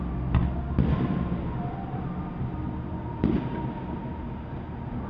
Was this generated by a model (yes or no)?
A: no